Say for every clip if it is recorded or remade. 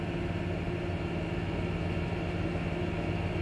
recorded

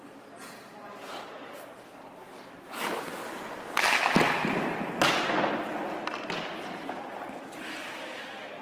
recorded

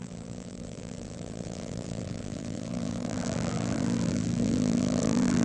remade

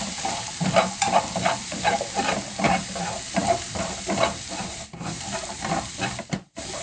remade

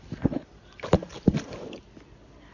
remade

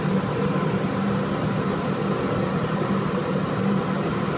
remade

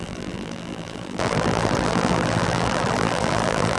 remade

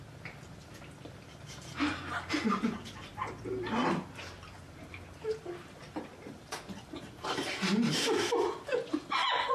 remade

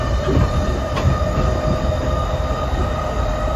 recorded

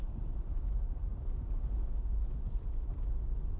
recorded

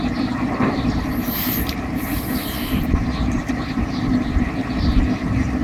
remade